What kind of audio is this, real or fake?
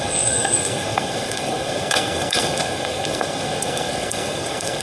fake